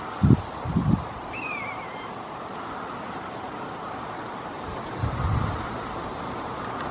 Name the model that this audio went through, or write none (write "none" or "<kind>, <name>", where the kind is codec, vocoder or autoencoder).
none